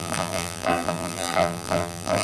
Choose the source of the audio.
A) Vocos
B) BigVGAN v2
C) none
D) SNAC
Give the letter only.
B